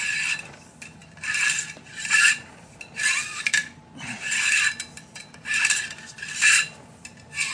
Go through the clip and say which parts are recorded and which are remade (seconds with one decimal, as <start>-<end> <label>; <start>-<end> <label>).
0.0-1.0 recorded; 1.0-2.8 remade; 2.8-7.5 recorded